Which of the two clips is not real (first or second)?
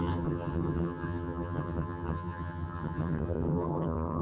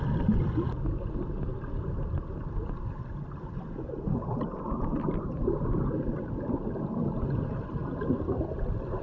first